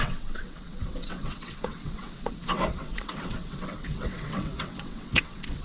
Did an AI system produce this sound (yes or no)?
yes